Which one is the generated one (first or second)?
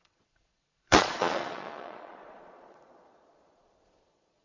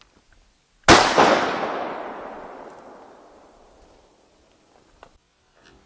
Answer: first